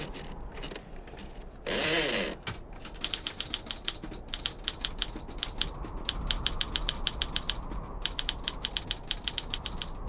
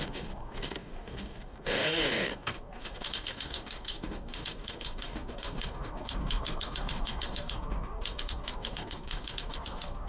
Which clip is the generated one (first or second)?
second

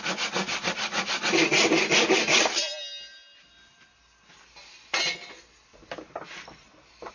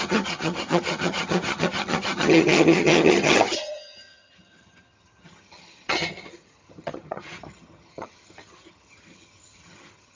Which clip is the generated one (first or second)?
second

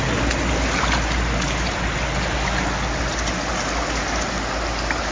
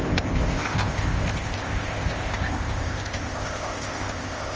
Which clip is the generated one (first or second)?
second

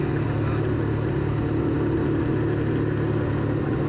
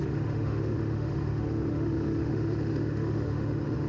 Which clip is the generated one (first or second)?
second